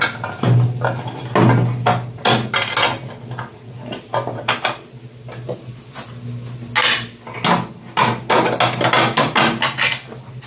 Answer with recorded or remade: recorded